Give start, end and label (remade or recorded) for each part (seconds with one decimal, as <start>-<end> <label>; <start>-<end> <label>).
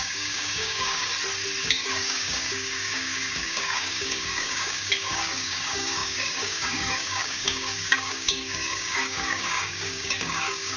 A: 0.0-1.1 remade; 1.1-1.6 recorded; 1.6-10.8 remade